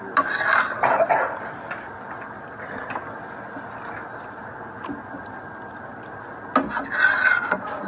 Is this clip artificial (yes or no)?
no